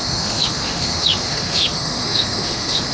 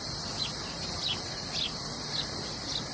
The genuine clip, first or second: second